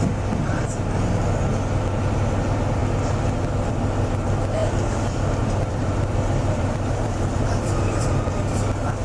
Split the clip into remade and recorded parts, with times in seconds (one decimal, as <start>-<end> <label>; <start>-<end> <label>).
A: 0.0-4.6 recorded; 4.6-8.3 remade; 8.3-9.0 recorded